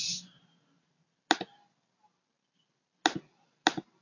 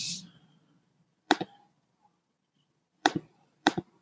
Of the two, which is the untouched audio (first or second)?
first